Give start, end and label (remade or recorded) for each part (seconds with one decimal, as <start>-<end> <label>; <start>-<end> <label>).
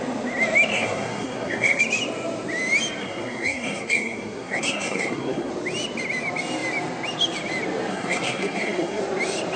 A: 0.0-0.7 recorded; 0.7-1.8 remade; 1.8-3.0 recorded; 3.0-5.5 remade; 5.5-7.9 recorded; 7.9-9.0 remade; 9.0-9.6 recorded